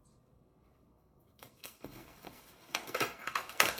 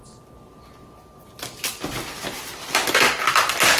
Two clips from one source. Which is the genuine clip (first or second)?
second